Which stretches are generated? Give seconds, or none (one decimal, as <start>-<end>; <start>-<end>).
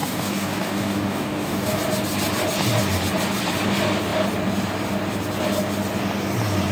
0.0-1.8